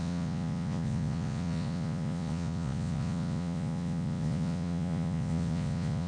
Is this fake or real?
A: fake